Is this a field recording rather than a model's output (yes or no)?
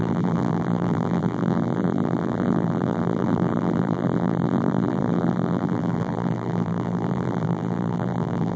no